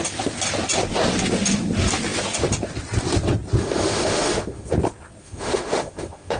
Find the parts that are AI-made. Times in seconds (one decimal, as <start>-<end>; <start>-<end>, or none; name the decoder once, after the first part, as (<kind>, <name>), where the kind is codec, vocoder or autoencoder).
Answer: 3.6-4.7 (autoencoder, DAC-VAE); 5.2-6.4